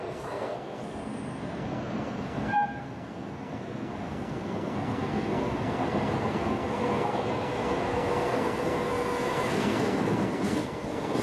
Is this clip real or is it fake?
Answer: fake